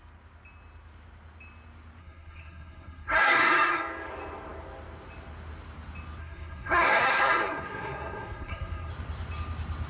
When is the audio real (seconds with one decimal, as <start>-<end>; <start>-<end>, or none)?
0.0-2.0; 3.8-6.2; 8.9-9.9